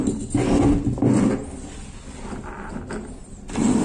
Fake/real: real